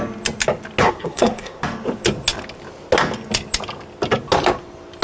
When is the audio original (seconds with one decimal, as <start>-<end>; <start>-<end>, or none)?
0.0-0.8; 1.6-5.0